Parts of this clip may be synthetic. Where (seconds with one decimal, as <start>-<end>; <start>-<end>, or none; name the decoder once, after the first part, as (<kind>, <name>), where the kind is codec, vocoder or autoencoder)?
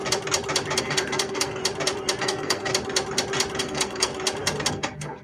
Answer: 0.8-1.6 (codec, SNAC); 2.2-2.7; 3.6-4.1; 4.7-5.2